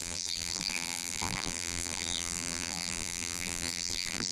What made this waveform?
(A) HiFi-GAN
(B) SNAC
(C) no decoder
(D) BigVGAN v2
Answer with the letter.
D